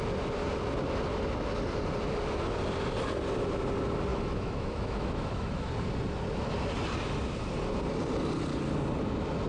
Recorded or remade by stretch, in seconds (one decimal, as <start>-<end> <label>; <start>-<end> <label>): 0.0-4.1 recorded; 4.1-5.7 remade; 5.7-9.5 recorded